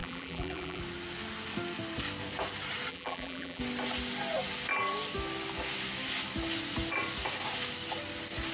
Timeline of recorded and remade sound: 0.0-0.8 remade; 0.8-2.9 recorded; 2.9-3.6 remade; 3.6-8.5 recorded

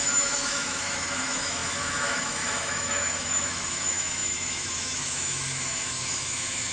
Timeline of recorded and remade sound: 0.0-6.7 remade